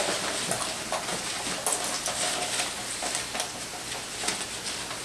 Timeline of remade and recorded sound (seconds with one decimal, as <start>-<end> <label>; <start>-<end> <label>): 0.0-5.0 recorded